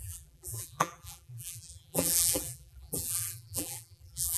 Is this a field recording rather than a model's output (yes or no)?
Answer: no